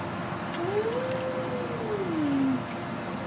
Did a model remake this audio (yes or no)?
no